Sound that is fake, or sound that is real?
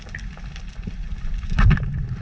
real